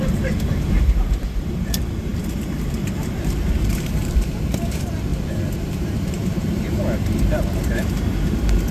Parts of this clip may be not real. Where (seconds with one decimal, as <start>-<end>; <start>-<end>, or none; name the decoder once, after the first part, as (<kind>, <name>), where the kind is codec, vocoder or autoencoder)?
0.0-5.1 (vocoder, BigVGAN v2); 5.6-8.7